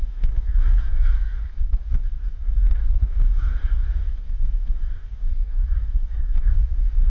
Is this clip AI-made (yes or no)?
yes